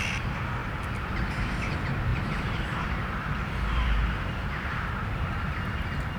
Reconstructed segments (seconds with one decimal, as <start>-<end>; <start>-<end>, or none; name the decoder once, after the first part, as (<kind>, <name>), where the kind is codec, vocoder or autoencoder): 0.6-1.7 (vocoder, BigVGAN v2); 2.1-4.9

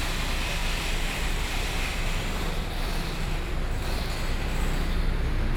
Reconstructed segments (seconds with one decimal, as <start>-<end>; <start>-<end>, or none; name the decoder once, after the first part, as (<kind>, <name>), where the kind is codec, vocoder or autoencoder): 0.6-4.0 (vocoder, BigVGAN v2)